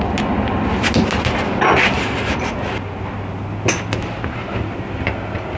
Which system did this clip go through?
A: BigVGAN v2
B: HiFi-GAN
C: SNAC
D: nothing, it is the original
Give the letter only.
D